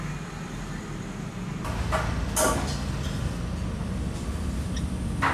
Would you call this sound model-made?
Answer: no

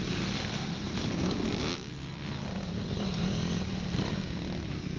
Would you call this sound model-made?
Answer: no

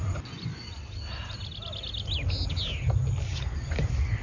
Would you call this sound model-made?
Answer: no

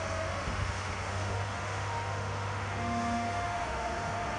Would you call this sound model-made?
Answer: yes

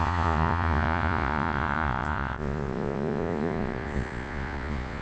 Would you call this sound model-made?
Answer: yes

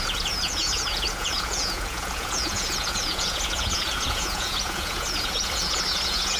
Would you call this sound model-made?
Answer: yes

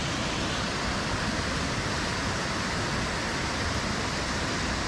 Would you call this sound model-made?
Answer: no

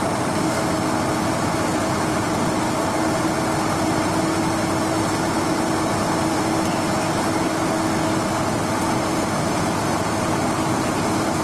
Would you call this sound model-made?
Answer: no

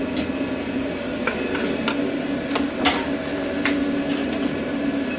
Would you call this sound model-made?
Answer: no